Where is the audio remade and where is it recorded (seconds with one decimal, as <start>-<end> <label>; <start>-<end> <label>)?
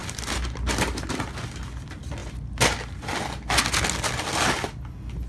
0.0-5.3 recorded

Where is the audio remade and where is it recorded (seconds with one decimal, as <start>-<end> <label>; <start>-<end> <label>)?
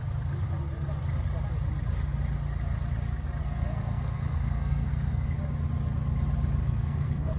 0.0-3.4 recorded; 3.4-5.3 remade; 5.3-6.6 recorded; 6.6-7.4 remade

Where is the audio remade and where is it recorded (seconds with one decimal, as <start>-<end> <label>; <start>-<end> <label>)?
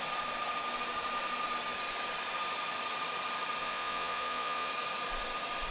0.0-3.6 recorded; 3.6-4.7 remade; 4.7-5.7 recorded